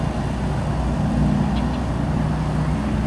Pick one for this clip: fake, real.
real